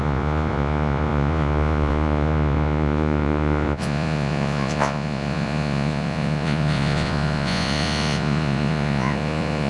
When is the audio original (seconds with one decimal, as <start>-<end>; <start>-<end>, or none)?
none